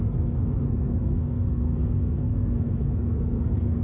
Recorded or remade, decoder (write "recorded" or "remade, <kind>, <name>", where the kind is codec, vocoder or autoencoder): remade, codec, SNAC